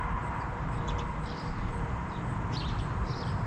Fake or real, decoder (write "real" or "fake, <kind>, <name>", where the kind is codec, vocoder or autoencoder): fake, vocoder, BigVGAN v2